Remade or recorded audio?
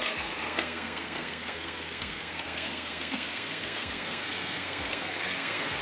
remade